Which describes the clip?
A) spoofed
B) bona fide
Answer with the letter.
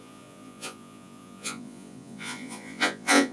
A